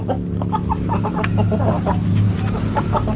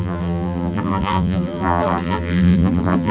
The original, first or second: first